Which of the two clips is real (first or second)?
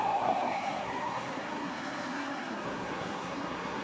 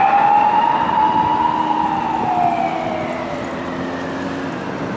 second